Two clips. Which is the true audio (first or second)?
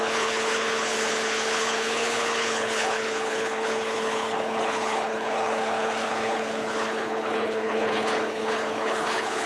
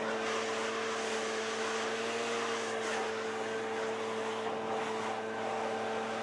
second